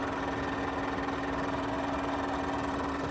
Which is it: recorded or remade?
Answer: recorded